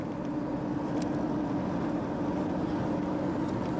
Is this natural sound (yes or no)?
yes